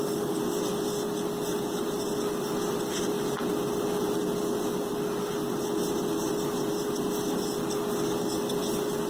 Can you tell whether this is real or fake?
real